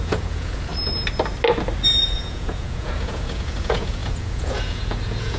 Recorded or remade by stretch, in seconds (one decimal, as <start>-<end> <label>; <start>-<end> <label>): 0.0-0.7 remade; 0.7-2.0 recorded; 2.0-5.4 remade